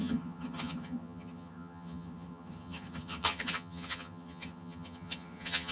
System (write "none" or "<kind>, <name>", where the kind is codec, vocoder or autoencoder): vocoder, HiFi-GAN